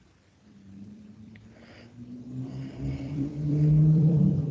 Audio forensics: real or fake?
fake